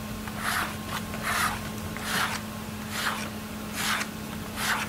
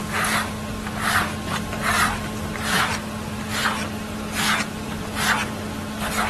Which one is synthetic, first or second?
first